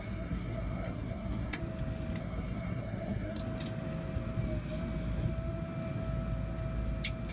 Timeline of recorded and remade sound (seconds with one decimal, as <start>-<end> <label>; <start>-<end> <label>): 0.0-1.6 remade; 1.6-2.2 recorded; 2.2-3.4 remade; 3.4-7.3 recorded